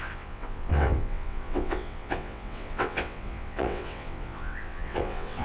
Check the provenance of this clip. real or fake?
fake